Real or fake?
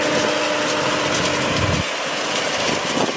real